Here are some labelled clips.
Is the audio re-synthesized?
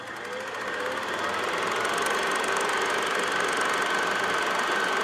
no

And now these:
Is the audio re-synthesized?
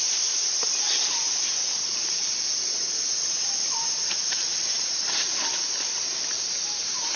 yes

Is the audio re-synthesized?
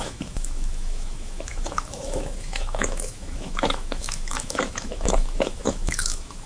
yes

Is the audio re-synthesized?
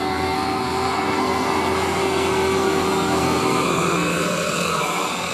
yes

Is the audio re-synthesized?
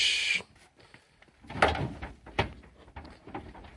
no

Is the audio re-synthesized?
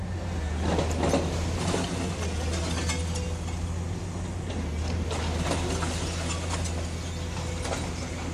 no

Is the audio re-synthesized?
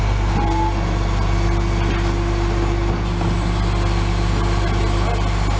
no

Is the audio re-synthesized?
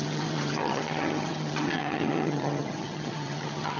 yes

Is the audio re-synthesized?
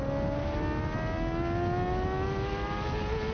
no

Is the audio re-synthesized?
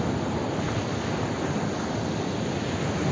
no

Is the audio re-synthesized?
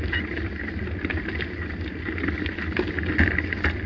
no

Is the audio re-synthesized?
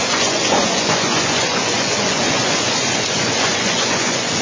yes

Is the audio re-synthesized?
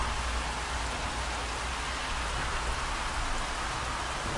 no